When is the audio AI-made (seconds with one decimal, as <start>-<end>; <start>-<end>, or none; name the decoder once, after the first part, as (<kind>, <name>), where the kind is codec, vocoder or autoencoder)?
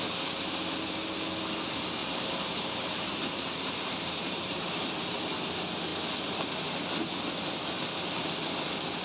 2.0-4.9 (vocoder, BigVGAN v2)